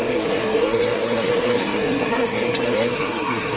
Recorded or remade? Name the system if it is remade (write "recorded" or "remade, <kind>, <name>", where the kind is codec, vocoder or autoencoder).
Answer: remade, codec, SNAC